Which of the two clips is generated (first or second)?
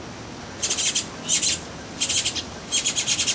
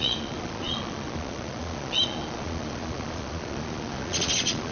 second